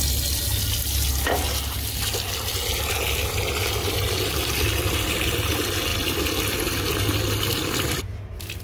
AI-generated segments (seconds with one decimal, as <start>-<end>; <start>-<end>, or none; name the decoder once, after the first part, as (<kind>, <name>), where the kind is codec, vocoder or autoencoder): none